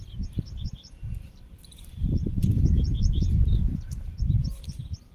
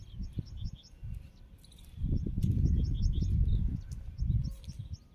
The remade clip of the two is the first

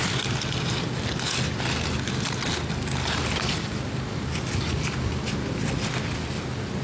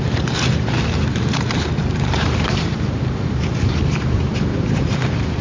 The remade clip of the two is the second